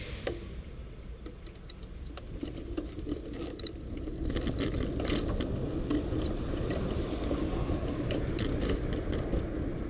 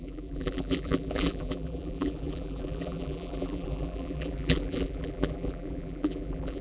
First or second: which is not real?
second